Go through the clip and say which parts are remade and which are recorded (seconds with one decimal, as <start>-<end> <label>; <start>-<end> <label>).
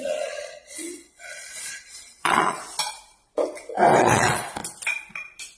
0.0-2.6 remade; 2.6-4.0 recorded; 4.0-4.6 remade; 4.6-5.6 recorded